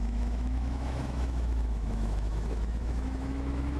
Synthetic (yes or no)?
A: yes